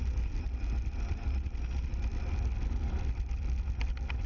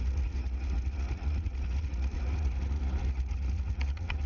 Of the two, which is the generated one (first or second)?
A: second